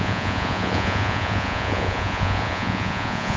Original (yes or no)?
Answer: no